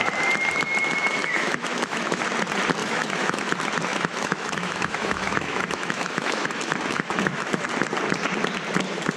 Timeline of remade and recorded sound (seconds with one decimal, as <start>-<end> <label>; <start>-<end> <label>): 0.0-1.2 recorded; 1.2-2.2 remade; 2.2-2.8 recorded; 2.8-3.5 remade; 3.5-3.9 recorded; 3.9-7.7 remade; 7.7-9.2 recorded

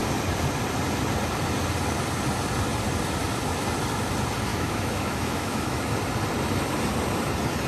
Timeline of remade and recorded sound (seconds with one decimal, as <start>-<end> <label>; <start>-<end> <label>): 0.0-4.5 recorded; 4.5-5.8 remade; 5.8-7.7 recorded

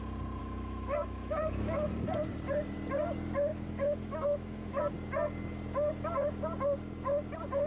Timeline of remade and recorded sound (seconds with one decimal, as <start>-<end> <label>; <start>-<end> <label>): 0.0-0.4 recorded; 0.4-1.9 remade; 1.9-3.5 recorded; 3.5-4.7 remade; 4.7-7.7 recorded

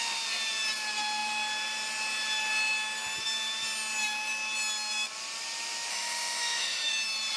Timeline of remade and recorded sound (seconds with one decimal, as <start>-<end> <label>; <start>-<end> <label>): 0.0-5.9 recorded; 5.9-6.9 remade; 6.9-7.4 recorded

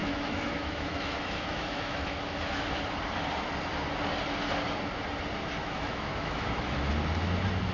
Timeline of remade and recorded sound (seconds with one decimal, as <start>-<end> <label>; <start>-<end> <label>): 0.0-2.8 remade; 2.8-5.6 recorded; 5.6-6.9 remade; 6.9-7.7 recorded